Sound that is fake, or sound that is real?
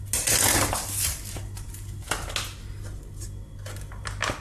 real